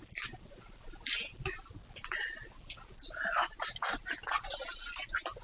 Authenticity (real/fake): real